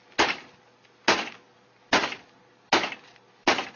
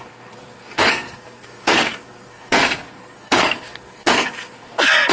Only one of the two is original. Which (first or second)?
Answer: first